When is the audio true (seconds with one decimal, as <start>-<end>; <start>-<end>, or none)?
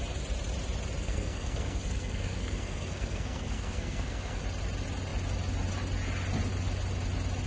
0.0-1.0; 4.4-7.5